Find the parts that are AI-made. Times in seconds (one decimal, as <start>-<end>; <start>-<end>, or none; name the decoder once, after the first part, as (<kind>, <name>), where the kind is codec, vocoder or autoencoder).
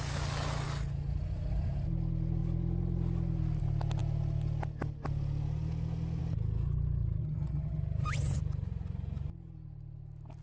7.2-7.8 (vocoder, HiFi-GAN)